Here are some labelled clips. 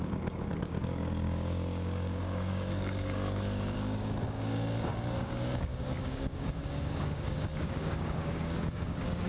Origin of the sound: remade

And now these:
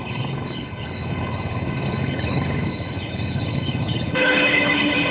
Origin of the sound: remade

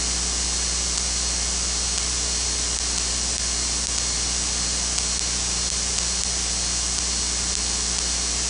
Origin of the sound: recorded